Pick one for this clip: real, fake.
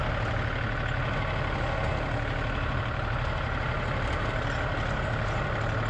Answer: real